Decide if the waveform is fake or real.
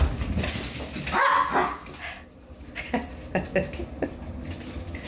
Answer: real